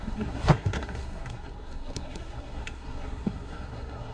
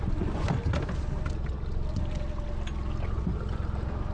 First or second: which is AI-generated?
first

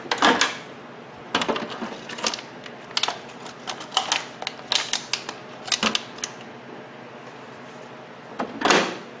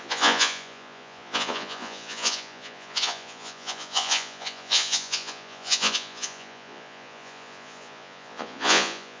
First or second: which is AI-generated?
second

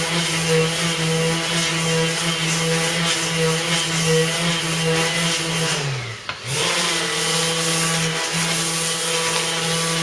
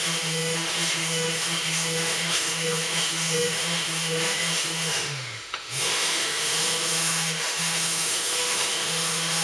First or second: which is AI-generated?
second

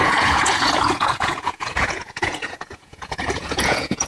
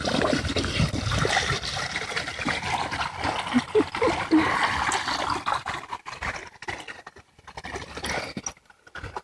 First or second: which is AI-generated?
first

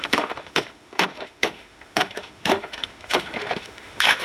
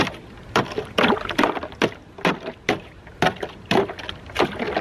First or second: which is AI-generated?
first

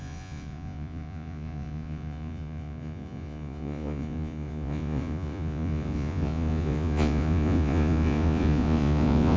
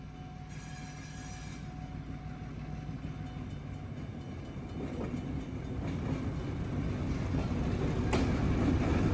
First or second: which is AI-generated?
first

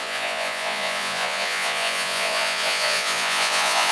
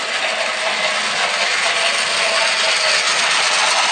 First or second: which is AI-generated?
first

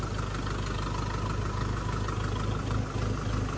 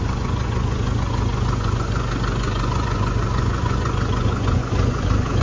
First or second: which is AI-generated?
second